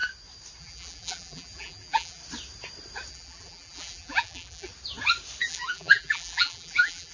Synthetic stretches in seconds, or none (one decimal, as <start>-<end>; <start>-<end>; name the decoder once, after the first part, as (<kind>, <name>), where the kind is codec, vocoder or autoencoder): 0.6-2.2 (vocoder, BigVGAN v2); 3.1-4.7; 5.4-7.1